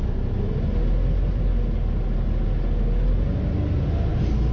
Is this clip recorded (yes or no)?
yes